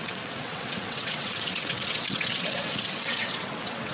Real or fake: fake